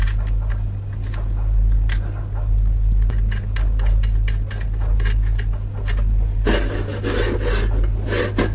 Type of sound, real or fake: real